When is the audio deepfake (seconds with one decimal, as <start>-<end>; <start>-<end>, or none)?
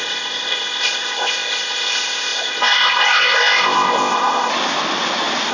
0.0-4.5